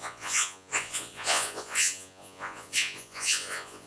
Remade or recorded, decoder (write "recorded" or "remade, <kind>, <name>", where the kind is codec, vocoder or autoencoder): remade, vocoder, Vocos